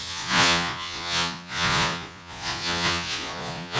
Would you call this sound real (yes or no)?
no